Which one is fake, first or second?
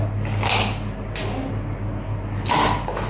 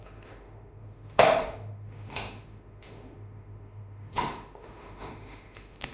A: second